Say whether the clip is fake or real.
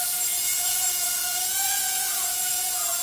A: fake